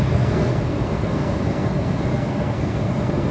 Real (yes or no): no